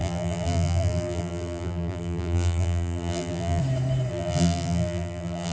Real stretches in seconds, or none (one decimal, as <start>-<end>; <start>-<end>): 3.6-4.1

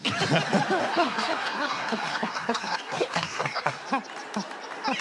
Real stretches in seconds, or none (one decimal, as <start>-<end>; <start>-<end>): 0.0-0.8; 3.8-5.0

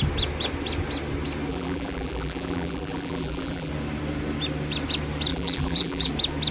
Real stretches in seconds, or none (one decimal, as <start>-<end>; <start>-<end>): 0.0-1.5; 3.7-5.3; 6.1-6.5

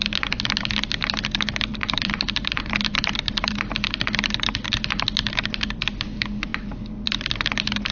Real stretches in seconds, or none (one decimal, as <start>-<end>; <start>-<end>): 0.0-1.7; 3.5-6.5; 7.1-7.9

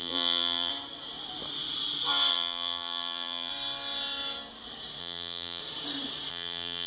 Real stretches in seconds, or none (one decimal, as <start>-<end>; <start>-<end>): 0.7-2.3; 3.5-5.0; 5.6-6.3